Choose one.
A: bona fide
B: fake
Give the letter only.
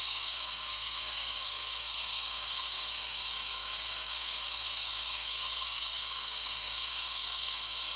B